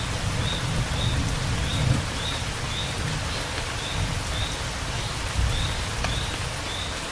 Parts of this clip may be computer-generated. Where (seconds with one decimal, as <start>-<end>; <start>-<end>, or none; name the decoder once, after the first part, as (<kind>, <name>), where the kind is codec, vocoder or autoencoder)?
none

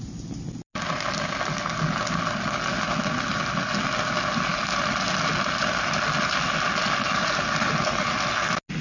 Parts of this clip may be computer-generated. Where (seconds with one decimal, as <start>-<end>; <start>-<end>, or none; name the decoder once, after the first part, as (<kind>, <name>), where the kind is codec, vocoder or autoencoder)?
none

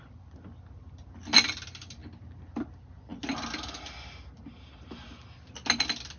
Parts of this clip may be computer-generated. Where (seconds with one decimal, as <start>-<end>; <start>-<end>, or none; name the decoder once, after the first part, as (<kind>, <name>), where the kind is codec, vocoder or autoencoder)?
none

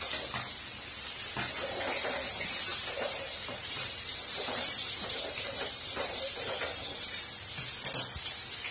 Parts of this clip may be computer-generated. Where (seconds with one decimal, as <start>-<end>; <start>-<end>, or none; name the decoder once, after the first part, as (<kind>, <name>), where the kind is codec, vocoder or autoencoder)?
2.7-7.2 (vocoder, BigVGAN v2)